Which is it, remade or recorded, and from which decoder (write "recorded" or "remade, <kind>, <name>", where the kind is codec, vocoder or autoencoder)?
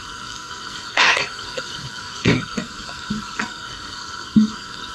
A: remade, codec, SNAC